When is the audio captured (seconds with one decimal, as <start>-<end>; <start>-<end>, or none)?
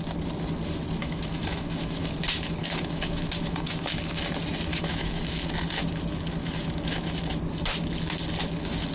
0.0-1.0; 2.1-2.6; 4.3-4.7; 5.5-6.4; 7.1-8.9